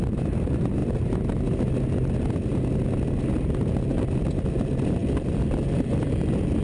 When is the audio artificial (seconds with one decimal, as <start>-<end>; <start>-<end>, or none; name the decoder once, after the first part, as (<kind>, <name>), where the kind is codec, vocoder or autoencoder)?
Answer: 5.0-5.9 (vocoder, BigVGAN v2)